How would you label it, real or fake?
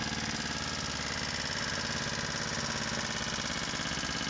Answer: real